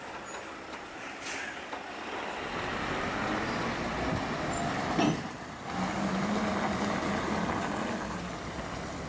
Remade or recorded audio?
recorded